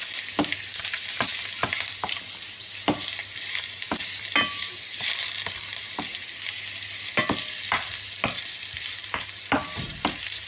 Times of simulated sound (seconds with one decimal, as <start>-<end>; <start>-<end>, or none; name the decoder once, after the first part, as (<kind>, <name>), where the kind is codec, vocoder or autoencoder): none